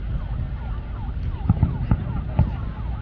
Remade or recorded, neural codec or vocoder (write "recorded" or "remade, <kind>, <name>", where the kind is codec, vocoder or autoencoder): recorded